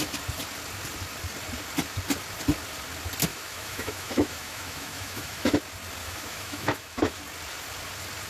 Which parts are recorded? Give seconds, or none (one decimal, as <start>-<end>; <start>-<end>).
0.0-3.3; 5.6-6.0; 7.2-8.3